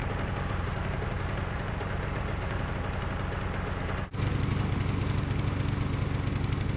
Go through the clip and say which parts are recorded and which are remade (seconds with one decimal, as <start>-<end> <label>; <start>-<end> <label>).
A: 0.0-2.7 remade; 2.7-6.8 recorded